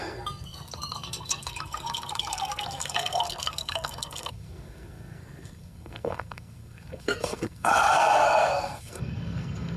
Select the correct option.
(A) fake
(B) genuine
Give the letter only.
A